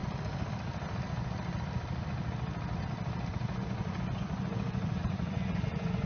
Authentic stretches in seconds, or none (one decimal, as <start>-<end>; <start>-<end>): 0.0-3.3